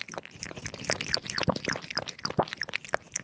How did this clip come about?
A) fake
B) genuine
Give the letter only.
B